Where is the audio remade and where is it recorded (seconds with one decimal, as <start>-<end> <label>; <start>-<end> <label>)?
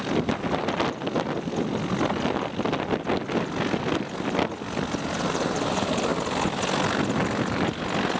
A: 0.0-8.2 recorded